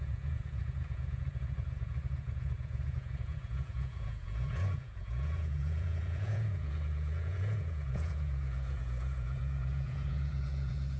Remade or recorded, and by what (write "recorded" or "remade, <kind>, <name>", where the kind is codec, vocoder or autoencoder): remade, vocoder, Vocos